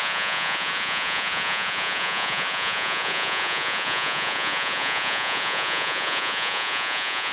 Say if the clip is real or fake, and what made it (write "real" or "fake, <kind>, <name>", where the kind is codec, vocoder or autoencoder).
fake, vocoder, Vocos